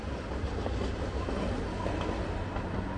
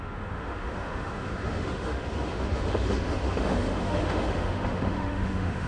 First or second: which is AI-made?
second